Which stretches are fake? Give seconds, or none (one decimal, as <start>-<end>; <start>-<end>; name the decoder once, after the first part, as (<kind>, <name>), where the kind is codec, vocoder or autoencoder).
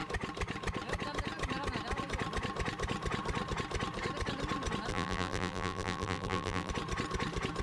4.9-6.7 (vocoder, BigVGAN v2)